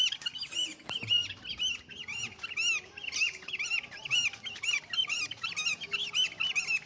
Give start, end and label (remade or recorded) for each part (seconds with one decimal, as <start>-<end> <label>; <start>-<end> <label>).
0.0-6.9 recorded